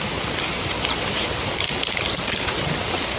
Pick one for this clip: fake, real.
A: real